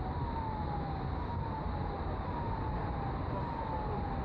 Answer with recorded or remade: recorded